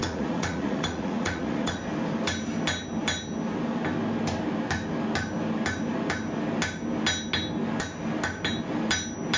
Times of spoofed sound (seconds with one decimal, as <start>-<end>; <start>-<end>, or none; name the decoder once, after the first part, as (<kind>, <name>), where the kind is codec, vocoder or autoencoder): 0.0-1.8 (vocoder, Vocos)